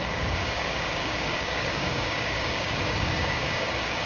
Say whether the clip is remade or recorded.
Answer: remade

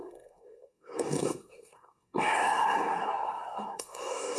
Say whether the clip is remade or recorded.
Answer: remade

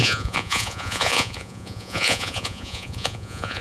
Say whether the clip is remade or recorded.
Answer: remade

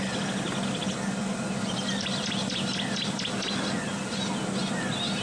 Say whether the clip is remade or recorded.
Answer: recorded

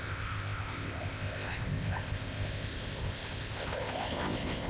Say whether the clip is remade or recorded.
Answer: remade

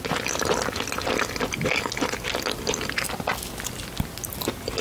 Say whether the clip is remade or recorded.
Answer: recorded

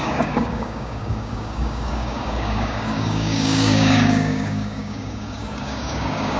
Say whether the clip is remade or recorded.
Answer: remade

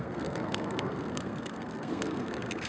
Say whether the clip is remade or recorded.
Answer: remade